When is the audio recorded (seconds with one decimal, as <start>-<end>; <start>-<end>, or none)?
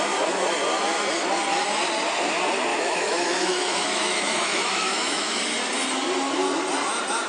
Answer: 0.0-2.7; 5.4-7.3